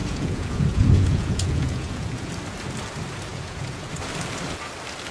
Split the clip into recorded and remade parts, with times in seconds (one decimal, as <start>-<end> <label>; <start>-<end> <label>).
0.0-2.3 remade; 2.3-3.3 recorded; 3.3-3.9 remade; 3.9-5.1 recorded